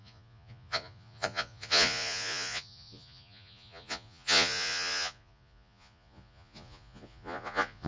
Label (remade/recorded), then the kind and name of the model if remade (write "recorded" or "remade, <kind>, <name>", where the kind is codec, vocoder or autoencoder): remade, vocoder, Vocos